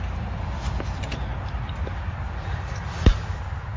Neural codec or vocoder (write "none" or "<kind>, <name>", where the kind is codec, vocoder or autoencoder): none